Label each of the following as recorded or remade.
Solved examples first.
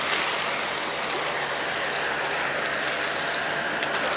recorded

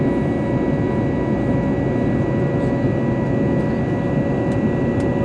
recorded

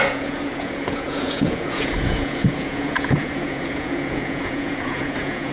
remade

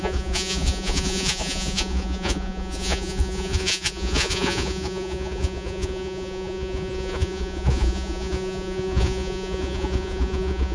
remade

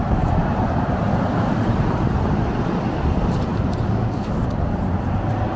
recorded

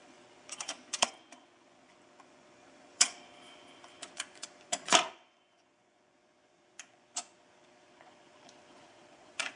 remade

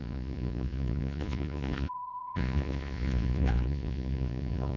remade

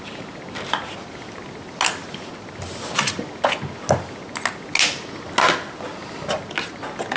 recorded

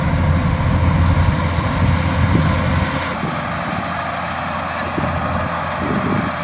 recorded